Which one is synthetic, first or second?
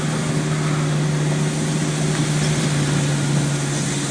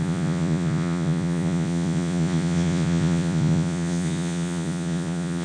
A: second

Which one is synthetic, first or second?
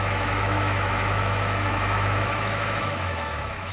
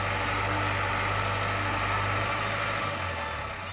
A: first